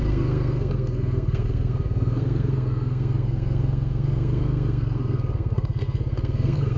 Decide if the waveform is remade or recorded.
remade